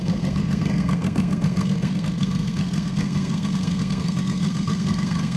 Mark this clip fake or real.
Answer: fake